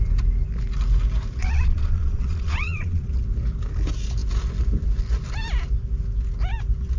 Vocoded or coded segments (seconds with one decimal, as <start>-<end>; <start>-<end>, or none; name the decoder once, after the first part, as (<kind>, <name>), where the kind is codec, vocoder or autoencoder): 1.4-3.1 (vocoder, Vocos)